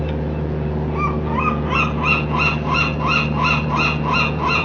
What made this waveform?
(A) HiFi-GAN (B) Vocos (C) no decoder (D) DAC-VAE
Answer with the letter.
B